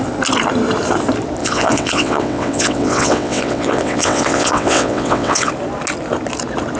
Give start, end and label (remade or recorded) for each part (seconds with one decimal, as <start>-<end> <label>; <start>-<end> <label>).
0.0-1.4 recorded; 1.4-5.5 remade; 5.5-6.8 recorded